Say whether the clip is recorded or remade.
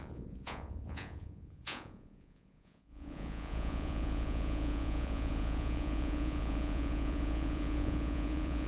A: remade